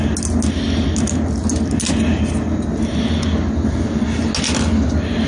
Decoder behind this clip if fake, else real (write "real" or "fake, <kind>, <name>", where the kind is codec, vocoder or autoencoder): real